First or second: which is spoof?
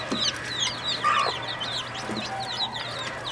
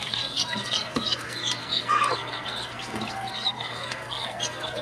second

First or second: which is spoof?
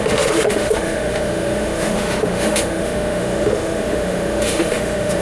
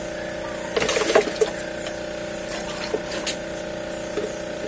first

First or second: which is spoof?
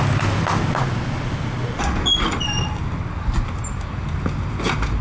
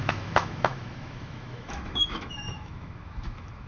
second